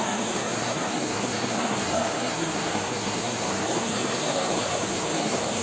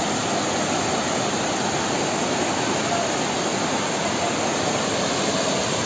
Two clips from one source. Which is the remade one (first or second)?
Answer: first